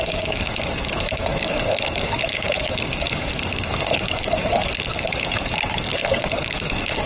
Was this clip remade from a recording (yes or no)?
yes